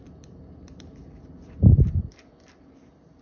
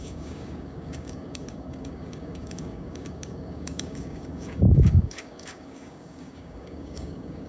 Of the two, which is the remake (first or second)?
second